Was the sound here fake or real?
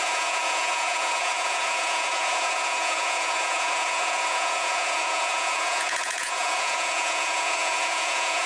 fake